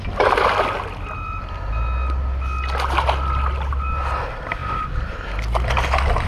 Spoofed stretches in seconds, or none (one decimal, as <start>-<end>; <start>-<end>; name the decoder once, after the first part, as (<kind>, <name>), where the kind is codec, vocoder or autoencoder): 4.6-5.7 (vocoder, BigVGAN v2)